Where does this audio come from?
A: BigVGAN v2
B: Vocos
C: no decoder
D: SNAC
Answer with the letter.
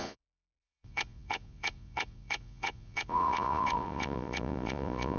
B